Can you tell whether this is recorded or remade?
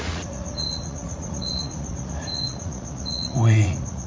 remade